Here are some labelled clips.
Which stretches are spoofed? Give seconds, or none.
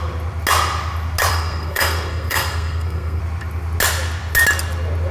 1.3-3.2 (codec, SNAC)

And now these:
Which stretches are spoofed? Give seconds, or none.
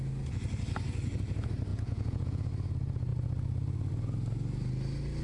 1.7-2.5 (vocoder, Vocos)